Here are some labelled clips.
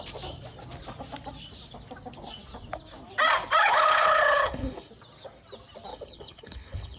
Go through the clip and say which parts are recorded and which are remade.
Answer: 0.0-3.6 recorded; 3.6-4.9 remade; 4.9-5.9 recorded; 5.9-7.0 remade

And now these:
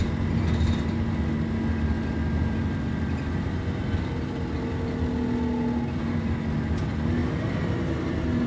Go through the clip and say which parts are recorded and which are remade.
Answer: 0.0-8.5 recorded